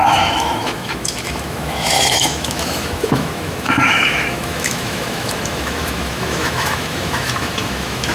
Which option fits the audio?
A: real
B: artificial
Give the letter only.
B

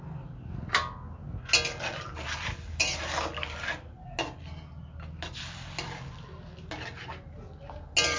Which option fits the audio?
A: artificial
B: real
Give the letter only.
B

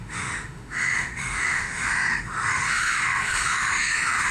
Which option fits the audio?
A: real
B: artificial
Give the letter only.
B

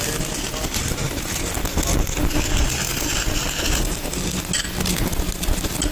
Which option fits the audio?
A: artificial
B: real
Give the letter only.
B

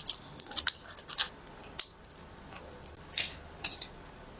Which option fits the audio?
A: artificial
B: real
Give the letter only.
B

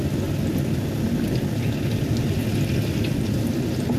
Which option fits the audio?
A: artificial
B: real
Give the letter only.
B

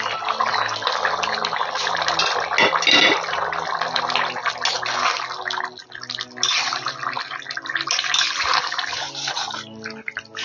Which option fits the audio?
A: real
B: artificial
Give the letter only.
A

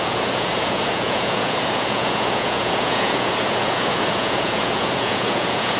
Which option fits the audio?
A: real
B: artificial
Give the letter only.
B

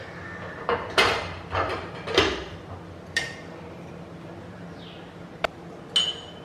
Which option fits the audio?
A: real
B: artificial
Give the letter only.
A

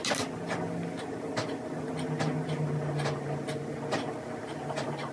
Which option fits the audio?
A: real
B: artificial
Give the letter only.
A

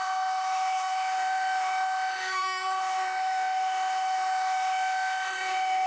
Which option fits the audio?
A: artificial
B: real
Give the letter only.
A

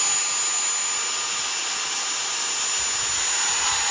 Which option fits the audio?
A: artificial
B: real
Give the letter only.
B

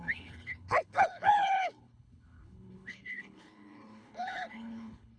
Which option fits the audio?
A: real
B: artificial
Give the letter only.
B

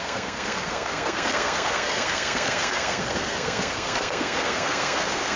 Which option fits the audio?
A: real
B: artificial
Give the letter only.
B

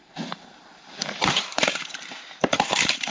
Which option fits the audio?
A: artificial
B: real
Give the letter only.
A